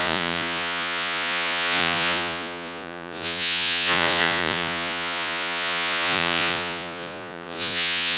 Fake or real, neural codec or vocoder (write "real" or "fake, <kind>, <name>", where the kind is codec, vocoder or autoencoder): fake, vocoder, Vocos